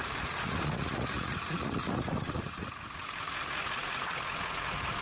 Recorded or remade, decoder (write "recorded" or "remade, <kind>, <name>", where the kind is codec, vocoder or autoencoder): remade, vocoder, Vocos